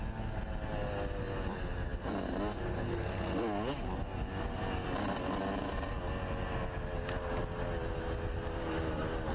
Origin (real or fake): real